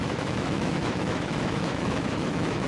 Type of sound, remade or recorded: remade